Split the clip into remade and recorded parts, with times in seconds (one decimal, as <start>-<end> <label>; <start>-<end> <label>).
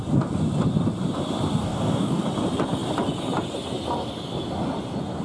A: 0.0-1.6 recorded; 1.6-2.2 remade; 2.2-5.2 recorded